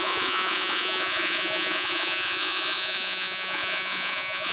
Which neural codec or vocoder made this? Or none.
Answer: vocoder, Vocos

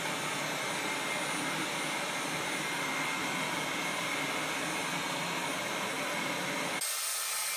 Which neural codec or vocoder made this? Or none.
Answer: none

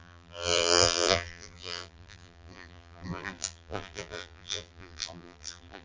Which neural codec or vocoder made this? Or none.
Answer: vocoder, BigVGAN v2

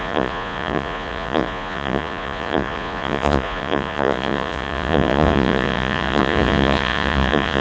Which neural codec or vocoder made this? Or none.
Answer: vocoder, Vocos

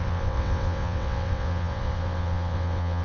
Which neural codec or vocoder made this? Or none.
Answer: vocoder, WaveNeXt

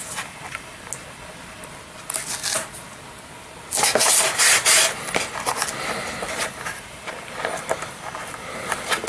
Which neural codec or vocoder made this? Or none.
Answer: none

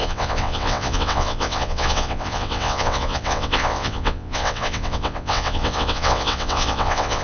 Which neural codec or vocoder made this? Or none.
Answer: vocoder, WaveNeXt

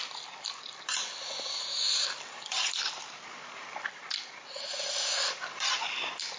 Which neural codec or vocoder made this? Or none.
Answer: vocoder, BigVGAN v2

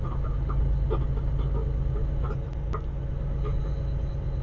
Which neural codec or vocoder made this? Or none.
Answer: none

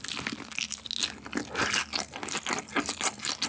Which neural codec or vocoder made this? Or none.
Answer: none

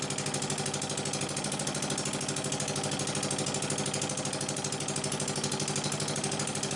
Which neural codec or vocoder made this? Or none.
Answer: none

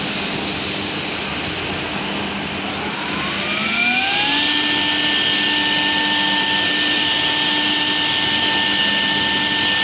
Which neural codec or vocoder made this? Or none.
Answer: none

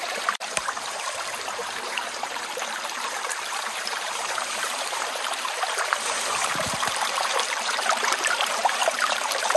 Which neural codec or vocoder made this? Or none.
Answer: vocoder, BigVGAN v2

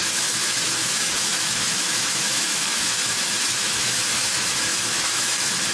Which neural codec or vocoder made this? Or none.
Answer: autoencoder, DAC-VAE